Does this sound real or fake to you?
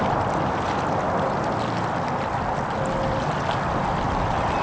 real